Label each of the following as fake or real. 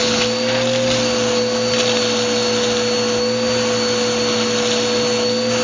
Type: real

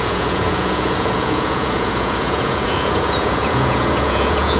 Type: fake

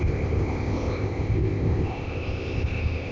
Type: fake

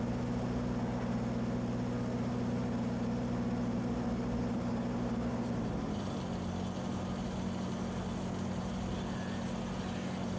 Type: real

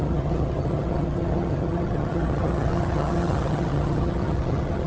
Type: fake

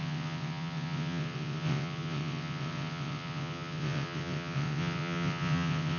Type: fake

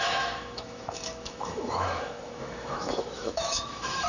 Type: fake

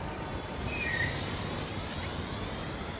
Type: real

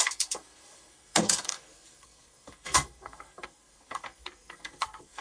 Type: fake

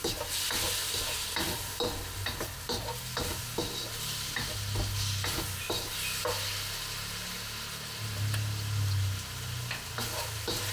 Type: real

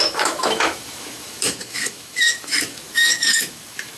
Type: fake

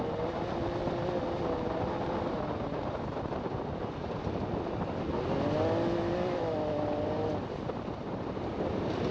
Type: real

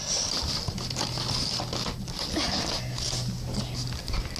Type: real